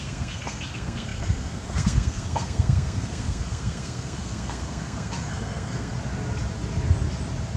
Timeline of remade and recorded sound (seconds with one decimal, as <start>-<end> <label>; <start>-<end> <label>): 0.0-5.9 remade; 5.9-7.6 recorded